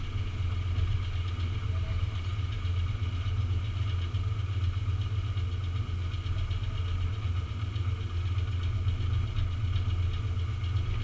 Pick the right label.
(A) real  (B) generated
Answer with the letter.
A